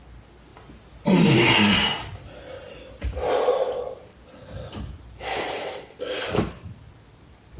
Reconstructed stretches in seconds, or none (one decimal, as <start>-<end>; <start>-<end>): none